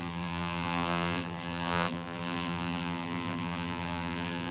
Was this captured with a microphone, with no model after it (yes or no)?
no